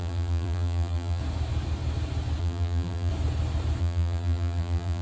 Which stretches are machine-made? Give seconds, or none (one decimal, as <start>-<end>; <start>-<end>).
0.0-1.2; 2.4-3.1; 3.8-5.0

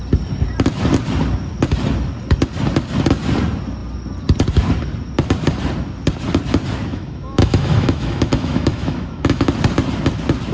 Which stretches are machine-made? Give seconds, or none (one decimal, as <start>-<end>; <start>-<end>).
6.9-9.5